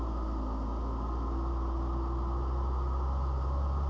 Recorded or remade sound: recorded